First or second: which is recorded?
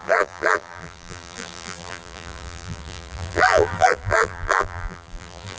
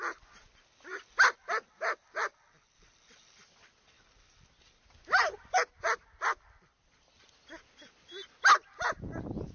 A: second